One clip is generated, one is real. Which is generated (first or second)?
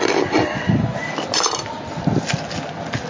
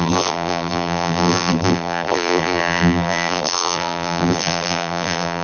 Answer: second